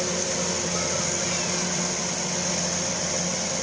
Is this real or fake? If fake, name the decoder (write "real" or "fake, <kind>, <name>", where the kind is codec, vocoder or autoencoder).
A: real